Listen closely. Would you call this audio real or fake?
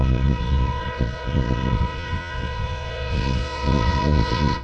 fake